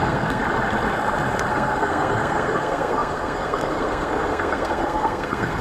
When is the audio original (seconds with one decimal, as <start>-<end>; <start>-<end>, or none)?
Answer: 0.4-1.5